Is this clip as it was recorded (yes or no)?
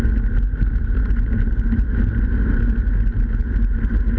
yes